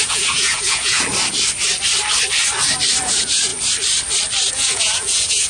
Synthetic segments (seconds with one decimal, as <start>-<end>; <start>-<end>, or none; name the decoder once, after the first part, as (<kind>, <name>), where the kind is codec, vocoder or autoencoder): 0.0-1.1 (vocoder, Vocos); 3.0-3.5; 4.5-5.5